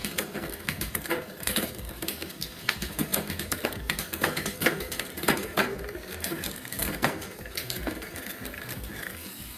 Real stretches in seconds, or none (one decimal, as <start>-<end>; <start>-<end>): none